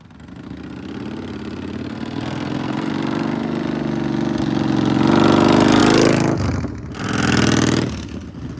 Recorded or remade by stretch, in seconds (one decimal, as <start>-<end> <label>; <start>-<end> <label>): 0.0-1.9 recorded; 1.9-2.9 remade; 2.9-8.6 recorded